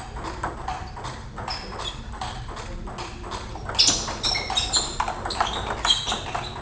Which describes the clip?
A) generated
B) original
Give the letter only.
B